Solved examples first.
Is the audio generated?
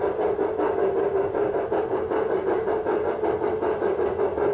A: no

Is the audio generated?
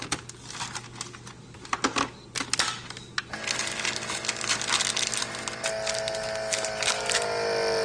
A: no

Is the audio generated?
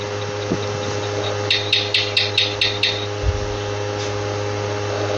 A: no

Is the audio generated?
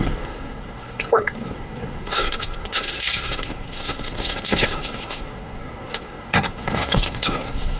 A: yes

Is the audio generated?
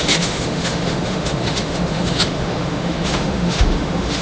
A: yes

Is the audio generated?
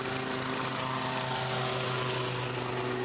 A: no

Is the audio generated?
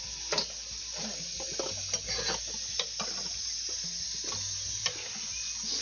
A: no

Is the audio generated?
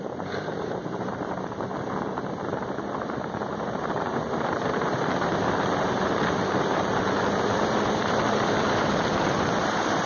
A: yes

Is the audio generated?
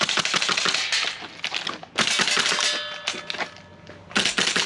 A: no